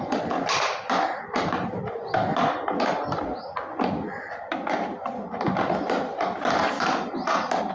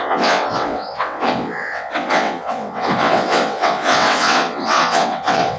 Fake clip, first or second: second